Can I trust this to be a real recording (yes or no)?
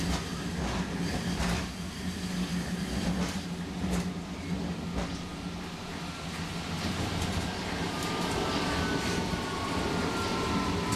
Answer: yes